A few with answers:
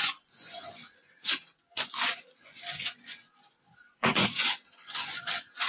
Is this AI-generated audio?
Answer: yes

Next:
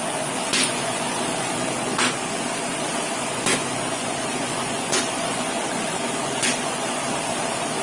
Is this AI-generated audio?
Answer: yes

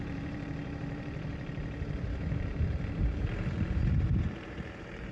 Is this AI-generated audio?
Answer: yes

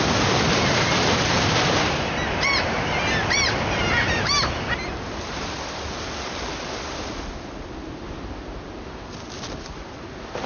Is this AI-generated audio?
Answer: no